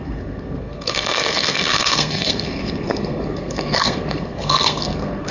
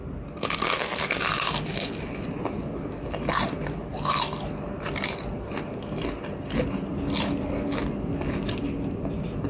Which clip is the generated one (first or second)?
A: first